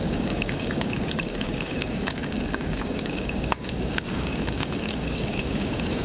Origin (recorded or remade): remade